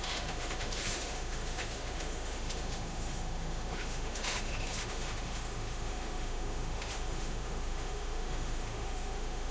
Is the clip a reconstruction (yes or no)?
yes